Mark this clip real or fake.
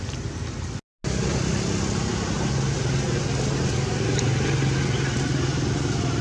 real